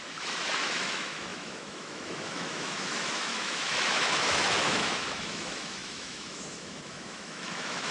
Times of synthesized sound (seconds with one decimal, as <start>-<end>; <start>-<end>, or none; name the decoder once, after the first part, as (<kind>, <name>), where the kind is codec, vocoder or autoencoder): 0.0-7.9 (autoencoder, DAC-VAE)